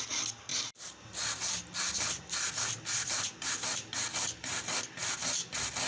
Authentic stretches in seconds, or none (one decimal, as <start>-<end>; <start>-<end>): 0.0-5.9

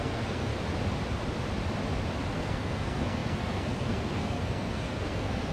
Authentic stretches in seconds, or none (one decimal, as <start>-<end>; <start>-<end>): 0.5-2.3

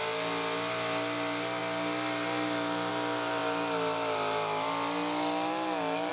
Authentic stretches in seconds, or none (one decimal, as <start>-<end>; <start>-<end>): 0.0-6.1

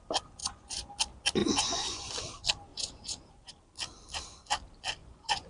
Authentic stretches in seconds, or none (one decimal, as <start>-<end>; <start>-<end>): 0.0-0.4; 0.9-1.4; 2.1-2.7; 3.5-5.0

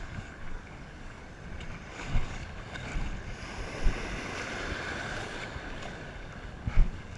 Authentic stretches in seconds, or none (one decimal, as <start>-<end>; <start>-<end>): 1.2-1.9; 2.9-5.0

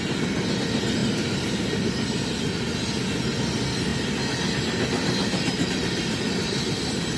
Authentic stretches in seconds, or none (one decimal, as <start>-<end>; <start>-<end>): 0.0-7.2

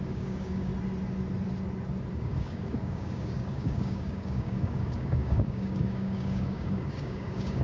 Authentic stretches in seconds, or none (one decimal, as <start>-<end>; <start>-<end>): 0.7-2.1